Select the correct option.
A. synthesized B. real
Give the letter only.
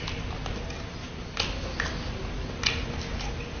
B